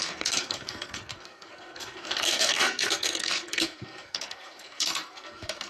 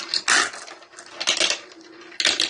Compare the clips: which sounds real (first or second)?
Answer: second